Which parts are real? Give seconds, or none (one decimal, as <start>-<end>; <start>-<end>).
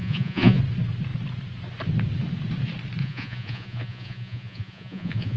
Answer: 0.6-3.0